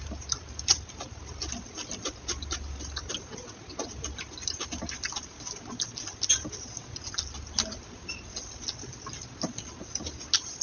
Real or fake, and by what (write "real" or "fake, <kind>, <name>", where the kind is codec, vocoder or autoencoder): real